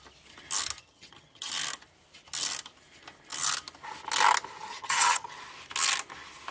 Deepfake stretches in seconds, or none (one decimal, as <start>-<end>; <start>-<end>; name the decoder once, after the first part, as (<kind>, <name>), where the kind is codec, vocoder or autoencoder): 0.8-1.5 (vocoder, HiFi-GAN); 4.6-5.4